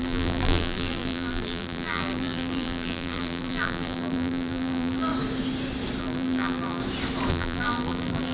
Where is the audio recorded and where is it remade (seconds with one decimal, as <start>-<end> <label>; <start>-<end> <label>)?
0.0-5.1 remade; 5.1-6.0 recorded; 6.0-6.8 remade; 6.8-7.3 recorded; 7.3-8.3 remade

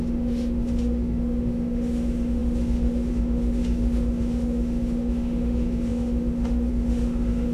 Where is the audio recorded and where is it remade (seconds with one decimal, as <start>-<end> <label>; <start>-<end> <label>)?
0.0-7.5 remade

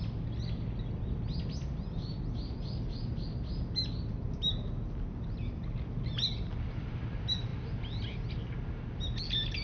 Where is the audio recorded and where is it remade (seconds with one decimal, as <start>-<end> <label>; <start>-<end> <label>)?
0.0-9.6 recorded

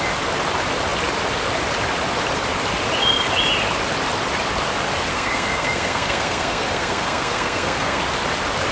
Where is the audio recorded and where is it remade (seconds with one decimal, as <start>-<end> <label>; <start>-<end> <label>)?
0.0-5.1 recorded; 5.1-8.0 remade; 8.0-8.7 recorded

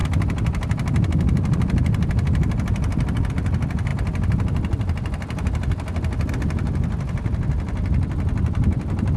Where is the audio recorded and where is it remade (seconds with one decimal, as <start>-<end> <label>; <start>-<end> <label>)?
0.0-9.2 recorded

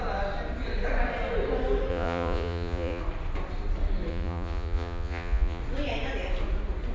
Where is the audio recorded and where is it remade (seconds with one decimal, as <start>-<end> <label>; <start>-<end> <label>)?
0.0-1.9 recorded; 1.9-3.0 remade; 3.0-4.1 recorded; 4.1-5.6 remade; 5.6-6.9 recorded